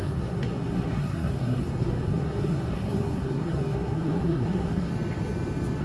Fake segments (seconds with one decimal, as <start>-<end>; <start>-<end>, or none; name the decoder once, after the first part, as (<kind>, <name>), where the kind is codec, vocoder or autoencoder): 0.0-4.9 (codec, SNAC)